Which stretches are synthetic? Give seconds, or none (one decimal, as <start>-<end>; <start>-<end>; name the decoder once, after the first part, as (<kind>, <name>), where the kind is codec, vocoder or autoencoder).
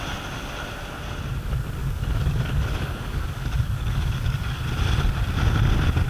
1.8-4.6 (codec, DAC)